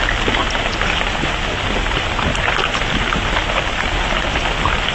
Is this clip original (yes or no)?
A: yes